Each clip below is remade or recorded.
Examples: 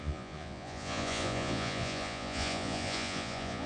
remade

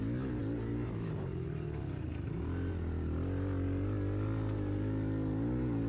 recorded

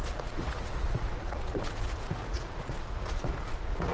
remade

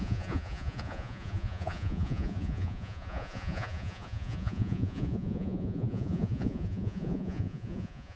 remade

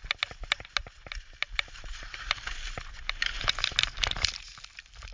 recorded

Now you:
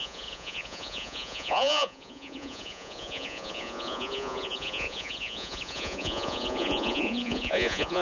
remade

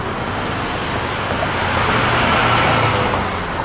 recorded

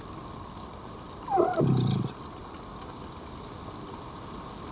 recorded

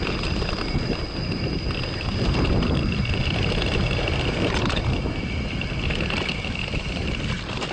recorded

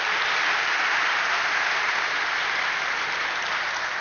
recorded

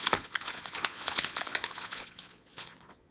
remade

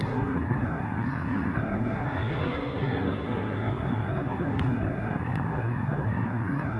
remade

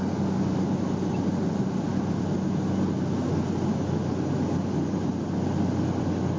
recorded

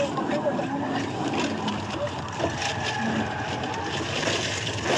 recorded